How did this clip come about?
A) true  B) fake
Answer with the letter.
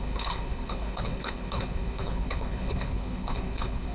B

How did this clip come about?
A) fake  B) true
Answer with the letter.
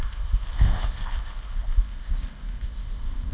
A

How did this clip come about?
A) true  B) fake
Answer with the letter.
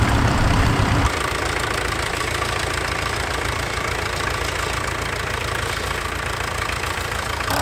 B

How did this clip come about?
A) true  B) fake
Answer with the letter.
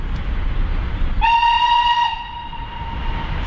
B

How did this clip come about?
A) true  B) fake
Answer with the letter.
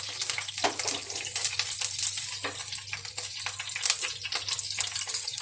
A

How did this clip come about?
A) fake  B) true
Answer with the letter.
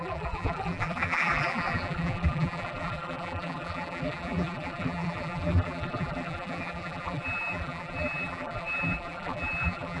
A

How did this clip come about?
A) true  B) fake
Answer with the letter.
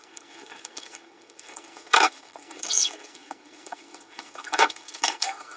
B